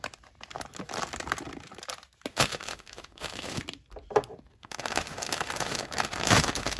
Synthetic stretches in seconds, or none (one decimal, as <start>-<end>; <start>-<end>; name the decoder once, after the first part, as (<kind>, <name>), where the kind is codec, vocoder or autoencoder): 2.3-3.6 (autoencoder, DAC-VAE); 4.6-6.8